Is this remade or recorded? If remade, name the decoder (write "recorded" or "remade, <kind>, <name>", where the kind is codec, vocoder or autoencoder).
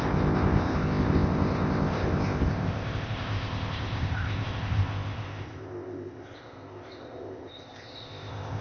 remade, codec, ZipCodec